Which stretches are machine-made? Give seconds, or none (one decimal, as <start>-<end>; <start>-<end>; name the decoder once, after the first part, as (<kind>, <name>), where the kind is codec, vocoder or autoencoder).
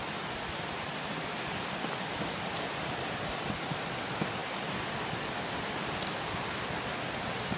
none